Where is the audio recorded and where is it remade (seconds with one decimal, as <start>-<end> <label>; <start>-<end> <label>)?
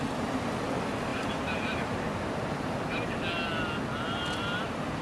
0.0-1.1 recorded; 1.1-2.0 remade; 2.0-5.0 recorded